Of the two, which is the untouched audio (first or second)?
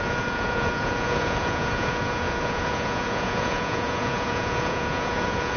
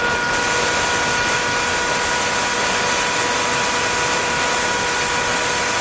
second